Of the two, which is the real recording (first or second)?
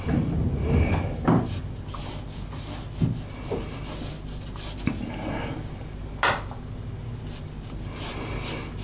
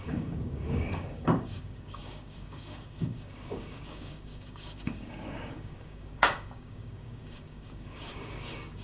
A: first